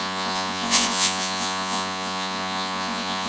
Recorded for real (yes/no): no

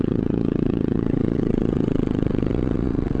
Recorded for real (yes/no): no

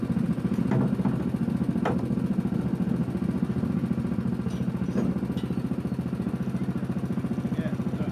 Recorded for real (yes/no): yes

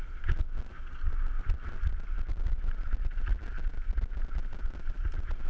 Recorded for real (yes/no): yes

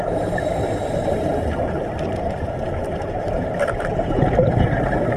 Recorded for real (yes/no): no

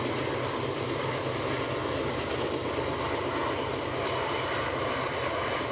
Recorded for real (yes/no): yes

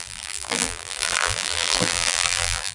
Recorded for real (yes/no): no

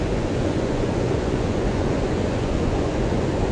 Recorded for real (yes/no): no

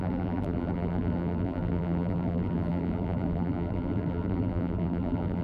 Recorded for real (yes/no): no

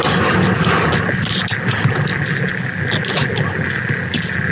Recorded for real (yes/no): yes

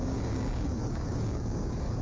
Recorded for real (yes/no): no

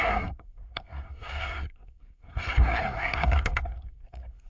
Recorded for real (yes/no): no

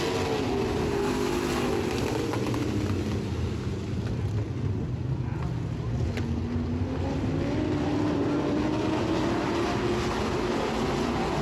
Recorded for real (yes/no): yes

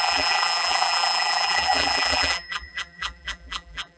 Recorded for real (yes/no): no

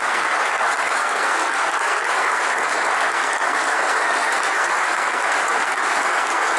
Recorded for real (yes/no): no